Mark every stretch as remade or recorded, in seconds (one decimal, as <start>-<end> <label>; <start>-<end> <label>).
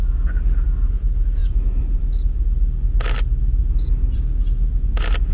0.0-1.4 recorded; 1.4-2.0 remade; 2.0-3.6 recorded; 3.6-4.2 remade; 4.2-5.3 recorded